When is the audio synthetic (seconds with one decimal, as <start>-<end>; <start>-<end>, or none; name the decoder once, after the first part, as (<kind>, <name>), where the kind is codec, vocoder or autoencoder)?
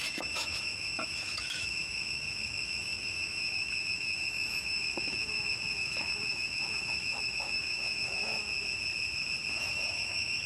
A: 0.0-8.3 (autoencoder, DAC-VAE); 9.5-10.5